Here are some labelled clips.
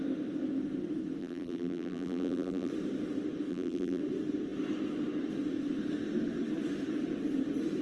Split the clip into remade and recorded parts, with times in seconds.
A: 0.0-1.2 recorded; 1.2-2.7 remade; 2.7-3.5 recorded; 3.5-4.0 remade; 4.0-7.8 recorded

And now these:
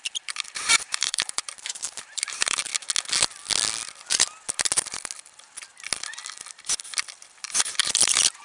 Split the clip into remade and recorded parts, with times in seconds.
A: 0.0-2.7 remade; 2.7-7.4 recorded; 7.4-8.4 remade

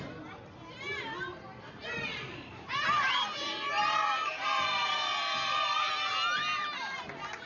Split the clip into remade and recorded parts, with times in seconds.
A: 0.0-1.8 recorded; 1.8-3.2 remade; 3.2-3.8 recorded; 3.8-5.9 remade; 5.9-7.5 recorded

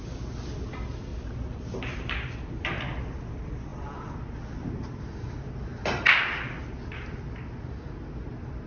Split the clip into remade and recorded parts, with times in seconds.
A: 0.0-1.1 recorded; 1.1-2.4 remade; 2.4-3.7 recorded; 3.7-4.3 remade; 4.3-8.7 recorded

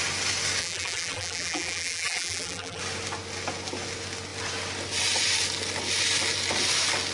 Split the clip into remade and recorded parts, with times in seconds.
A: 0.0-0.6 recorded; 0.6-2.8 remade; 2.8-7.1 recorded

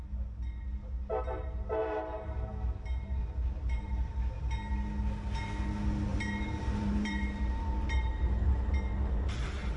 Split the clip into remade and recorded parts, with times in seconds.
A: 0.0-1.8 recorded; 1.8-4.1 remade; 4.1-6.1 recorded; 6.1-8.6 remade; 8.6-9.8 recorded